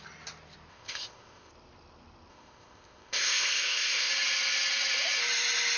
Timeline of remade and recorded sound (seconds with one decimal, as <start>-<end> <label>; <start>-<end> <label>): 0.0-0.7 recorded; 0.7-1.5 remade; 1.5-2.3 recorded; 2.3-4.1 remade; 4.1-5.8 recorded